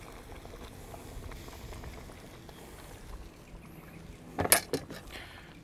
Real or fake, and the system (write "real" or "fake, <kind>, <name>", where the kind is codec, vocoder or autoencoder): real